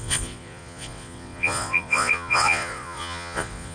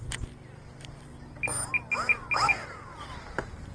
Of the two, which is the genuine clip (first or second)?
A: second